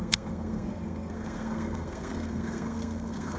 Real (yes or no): no